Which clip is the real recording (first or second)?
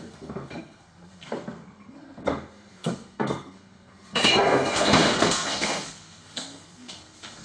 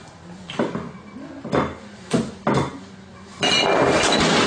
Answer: second